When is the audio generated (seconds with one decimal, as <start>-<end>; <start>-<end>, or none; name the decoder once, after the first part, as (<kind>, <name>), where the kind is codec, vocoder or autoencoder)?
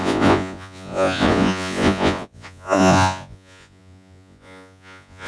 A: 0.0-5.3 (vocoder, Vocos)